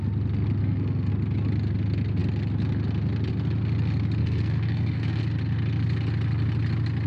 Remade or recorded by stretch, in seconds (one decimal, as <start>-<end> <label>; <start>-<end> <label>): 0.0-0.6 recorded; 0.6-1.1 remade; 1.1-4.2 recorded; 4.2-5.2 remade; 5.2-7.1 recorded